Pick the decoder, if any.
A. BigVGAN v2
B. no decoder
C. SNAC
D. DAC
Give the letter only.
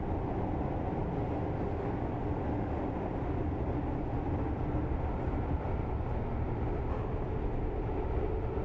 B